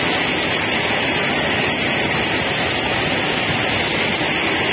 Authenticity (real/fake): real